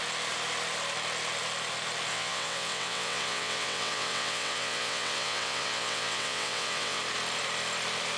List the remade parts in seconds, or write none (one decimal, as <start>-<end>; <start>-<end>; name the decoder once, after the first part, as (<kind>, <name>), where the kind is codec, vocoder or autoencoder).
2.1-7.0 (vocoder, WaveNeXt)